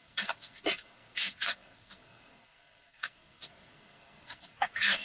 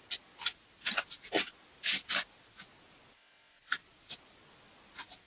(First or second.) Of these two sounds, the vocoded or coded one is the first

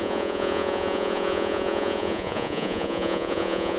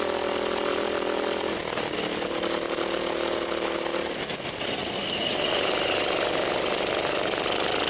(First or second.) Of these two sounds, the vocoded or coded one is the first